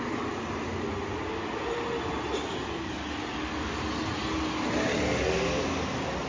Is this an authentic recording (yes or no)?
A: yes